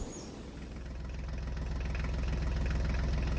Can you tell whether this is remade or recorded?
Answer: recorded